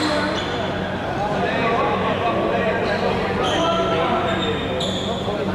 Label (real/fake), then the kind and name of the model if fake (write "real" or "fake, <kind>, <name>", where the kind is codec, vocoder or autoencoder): real